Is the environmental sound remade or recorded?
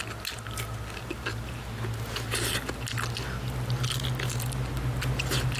recorded